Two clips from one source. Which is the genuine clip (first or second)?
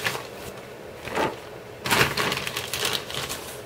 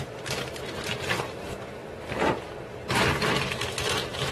first